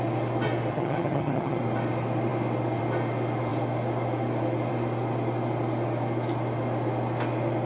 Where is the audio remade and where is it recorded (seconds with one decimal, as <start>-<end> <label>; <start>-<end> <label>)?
0.0-0.7 recorded; 0.7-1.6 remade; 1.6-7.7 recorded